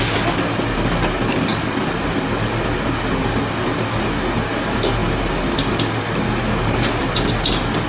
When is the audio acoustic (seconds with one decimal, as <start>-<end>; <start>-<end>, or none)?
0.0-7.9